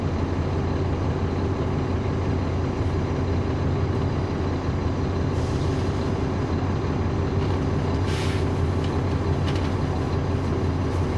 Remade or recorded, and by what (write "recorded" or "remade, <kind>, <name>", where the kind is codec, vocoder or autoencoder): recorded